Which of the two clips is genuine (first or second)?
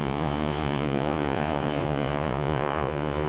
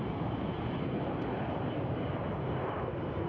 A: second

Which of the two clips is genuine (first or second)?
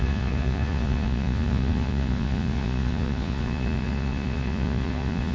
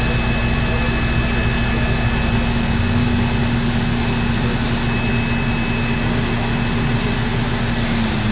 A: second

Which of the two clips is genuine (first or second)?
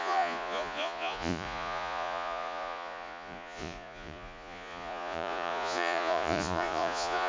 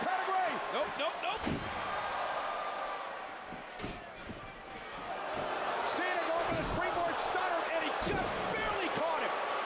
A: second